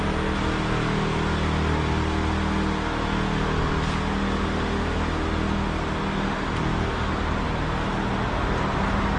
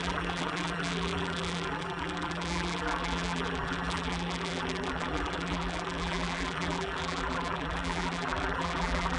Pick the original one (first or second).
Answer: first